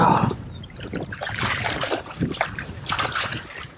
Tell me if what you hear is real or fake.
fake